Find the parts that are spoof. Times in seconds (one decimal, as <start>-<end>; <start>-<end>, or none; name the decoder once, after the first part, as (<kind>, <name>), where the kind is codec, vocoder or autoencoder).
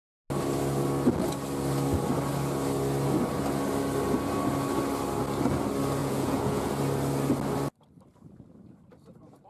6.0-6.7 (vocoder, Vocos)